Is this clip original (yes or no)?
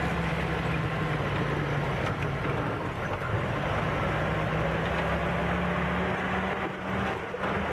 yes